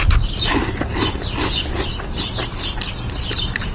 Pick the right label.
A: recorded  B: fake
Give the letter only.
A